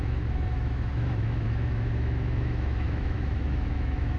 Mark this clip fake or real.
fake